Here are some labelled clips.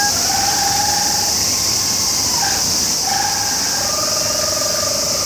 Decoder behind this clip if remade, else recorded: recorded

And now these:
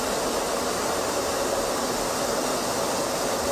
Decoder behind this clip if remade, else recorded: recorded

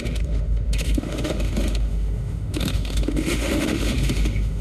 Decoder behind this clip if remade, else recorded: remade, autoencoder, DAC-VAE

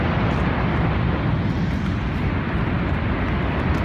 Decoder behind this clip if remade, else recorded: recorded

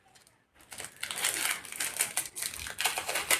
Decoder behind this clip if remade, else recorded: recorded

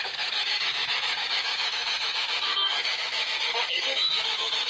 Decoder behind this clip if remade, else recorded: remade, autoencoder, DAC-VAE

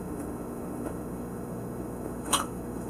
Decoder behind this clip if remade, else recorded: remade, autoencoder, DAC-VAE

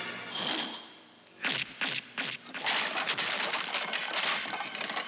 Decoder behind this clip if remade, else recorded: recorded